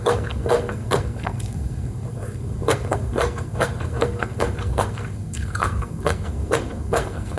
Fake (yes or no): yes